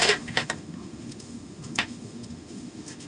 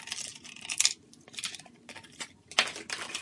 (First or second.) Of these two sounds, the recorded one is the second